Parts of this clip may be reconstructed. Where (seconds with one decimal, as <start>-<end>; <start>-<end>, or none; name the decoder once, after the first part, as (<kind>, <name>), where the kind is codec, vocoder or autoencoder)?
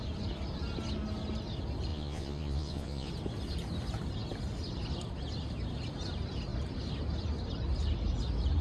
1.9-3.1 (vocoder, Vocos)